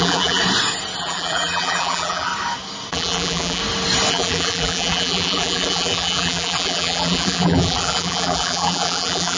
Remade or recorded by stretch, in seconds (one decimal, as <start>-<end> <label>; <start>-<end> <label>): 0.0-0.4 remade; 0.4-1.0 recorded; 1.0-2.3 remade; 2.3-2.9 recorded; 2.9-3.6 remade; 3.6-4.1 recorded; 4.1-9.4 remade